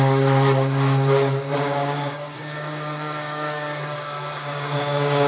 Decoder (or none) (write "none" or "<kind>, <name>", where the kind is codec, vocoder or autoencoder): codec, DAC